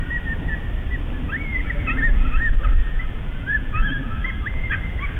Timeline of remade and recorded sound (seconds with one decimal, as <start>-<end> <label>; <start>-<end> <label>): 0.0-1.5 recorded; 1.5-2.4 remade; 2.4-2.8 recorded; 2.8-4.7 remade; 4.7-5.2 recorded